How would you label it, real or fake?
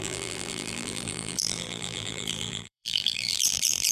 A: fake